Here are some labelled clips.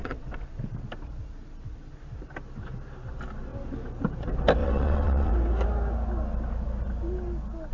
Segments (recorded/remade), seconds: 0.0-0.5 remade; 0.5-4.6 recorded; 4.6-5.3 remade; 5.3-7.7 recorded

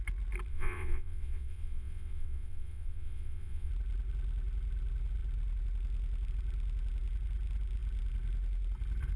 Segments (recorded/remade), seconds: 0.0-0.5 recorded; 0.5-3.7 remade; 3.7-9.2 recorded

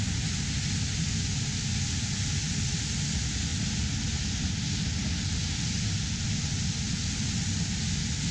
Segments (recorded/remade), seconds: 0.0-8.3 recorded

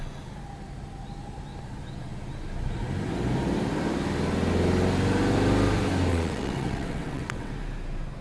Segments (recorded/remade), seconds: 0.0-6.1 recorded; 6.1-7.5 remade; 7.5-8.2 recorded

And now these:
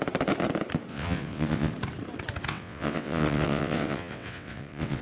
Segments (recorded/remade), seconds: 0.0-0.9 recorded; 0.9-1.7 remade; 1.7-2.5 recorded; 2.5-5.0 remade

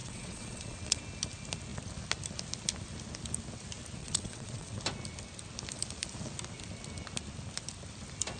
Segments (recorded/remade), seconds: 0.0-1.0 remade; 1.0-4.0 recorded; 4.0-4.8 remade; 4.8-8.4 recorded